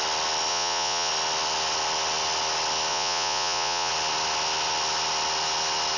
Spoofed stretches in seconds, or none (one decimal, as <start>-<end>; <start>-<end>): 0.5-1.1; 2.9-3.9